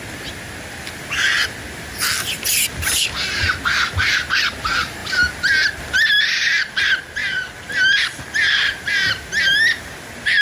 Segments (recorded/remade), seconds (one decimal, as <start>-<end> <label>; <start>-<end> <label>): 0.0-2.5 recorded; 2.5-3.4 remade; 3.4-5.0 recorded; 5.0-6.8 remade; 6.8-10.4 recorded